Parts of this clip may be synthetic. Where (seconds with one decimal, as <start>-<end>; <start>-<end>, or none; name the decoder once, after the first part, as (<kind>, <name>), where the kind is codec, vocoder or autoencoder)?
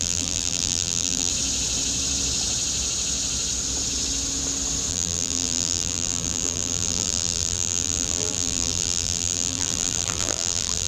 0.0-1.3 (vocoder, BigVGAN v2); 4.9-10.9